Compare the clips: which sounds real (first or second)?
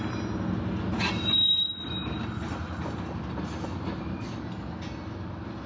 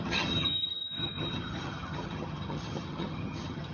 first